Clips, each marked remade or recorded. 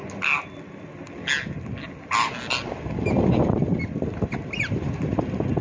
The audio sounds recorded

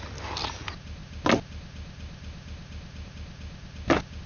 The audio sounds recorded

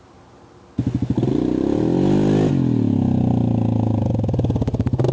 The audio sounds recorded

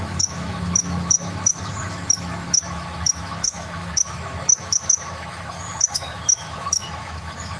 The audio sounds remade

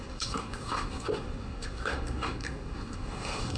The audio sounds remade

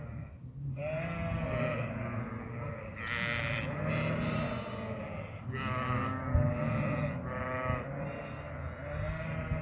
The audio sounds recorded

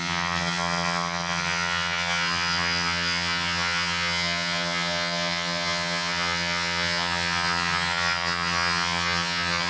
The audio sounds remade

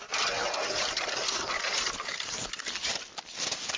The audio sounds recorded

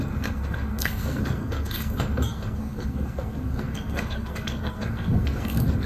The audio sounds remade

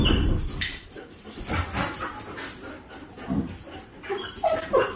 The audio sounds remade